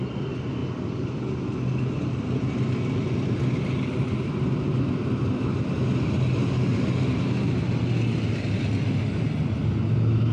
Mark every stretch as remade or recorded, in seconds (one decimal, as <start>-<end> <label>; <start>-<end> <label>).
0.0-10.3 recorded